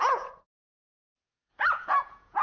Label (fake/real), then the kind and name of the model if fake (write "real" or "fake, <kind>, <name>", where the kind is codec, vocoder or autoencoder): fake, vocoder, Vocos